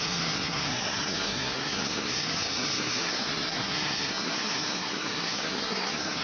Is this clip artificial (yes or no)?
yes